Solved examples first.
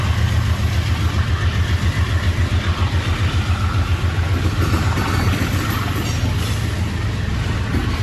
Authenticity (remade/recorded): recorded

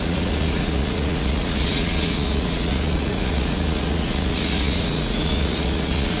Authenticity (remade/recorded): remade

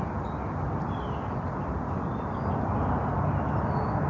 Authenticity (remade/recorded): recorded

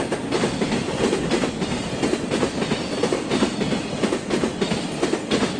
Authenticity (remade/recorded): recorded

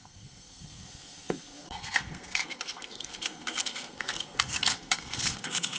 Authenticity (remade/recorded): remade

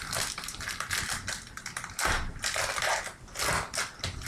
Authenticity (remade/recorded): recorded